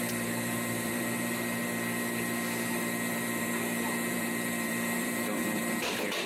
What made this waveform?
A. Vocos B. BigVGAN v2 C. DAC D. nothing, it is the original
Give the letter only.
B